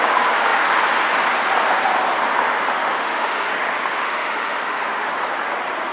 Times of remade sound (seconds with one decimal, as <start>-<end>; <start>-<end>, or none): 2.8-3.5; 4.0-5.1